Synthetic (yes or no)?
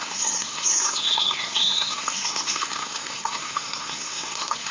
yes